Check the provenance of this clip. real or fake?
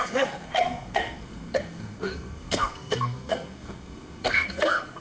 fake